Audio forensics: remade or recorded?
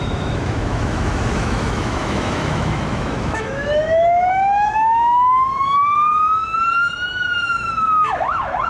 remade